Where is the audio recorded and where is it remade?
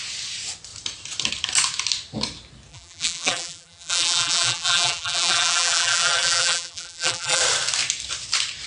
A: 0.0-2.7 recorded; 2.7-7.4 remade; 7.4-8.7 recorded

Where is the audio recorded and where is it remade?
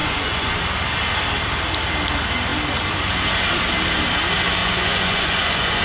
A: 0.0-0.5 remade; 0.5-4.6 recorded; 4.6-5.8 remade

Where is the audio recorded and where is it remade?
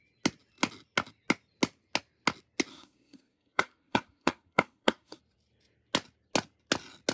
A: 0.0-2.7 recorded; 2.7-5.2 remade; 5.2-7.1 recorded